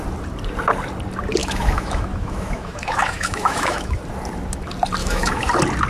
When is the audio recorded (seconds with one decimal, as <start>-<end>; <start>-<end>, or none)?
0.0-1.4; 4.0-5.0; 5.5-5.9